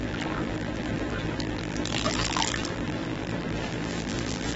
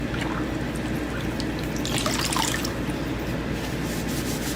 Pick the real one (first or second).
second